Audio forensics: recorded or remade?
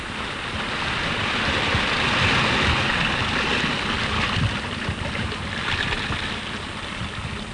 recorded